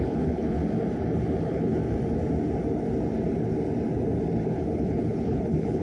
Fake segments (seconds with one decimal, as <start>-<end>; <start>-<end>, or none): 0.0-0.6; 1.4-1.8; 4.5-5.8